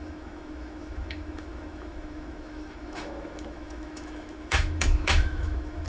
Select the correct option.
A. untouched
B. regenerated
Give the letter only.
B